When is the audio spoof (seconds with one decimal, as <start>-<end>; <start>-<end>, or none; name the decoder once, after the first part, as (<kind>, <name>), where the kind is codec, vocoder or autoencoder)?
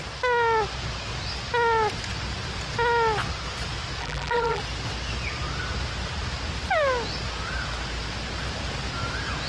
4.0-4.6 (vocoder, BigVGAN v2)